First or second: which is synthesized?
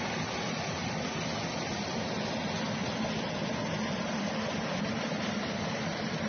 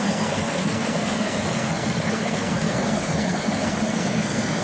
second